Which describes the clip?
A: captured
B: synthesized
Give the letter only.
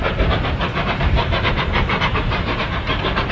B